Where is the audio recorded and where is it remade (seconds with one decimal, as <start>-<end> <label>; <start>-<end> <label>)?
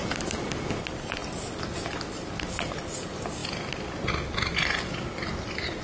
0.0-5.8 recorded